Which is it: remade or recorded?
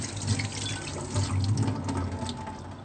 recorded